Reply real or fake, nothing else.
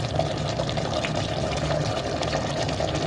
real